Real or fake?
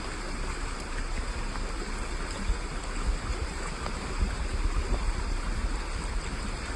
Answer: real